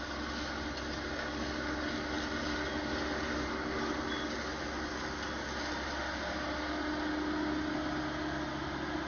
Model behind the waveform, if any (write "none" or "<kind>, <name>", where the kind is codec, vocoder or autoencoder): none